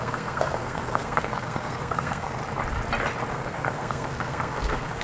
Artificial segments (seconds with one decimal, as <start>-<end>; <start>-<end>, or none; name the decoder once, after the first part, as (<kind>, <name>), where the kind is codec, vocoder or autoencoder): 0.0-2.4 (codec, SNAC); 3.3-5.0